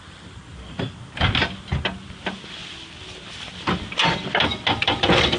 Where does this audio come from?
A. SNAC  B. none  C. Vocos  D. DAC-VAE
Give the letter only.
B